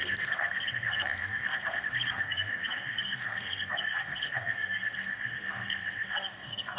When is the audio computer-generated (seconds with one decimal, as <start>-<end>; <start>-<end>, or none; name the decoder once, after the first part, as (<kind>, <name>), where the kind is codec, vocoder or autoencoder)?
0.0-6.8 (codec, SNAC)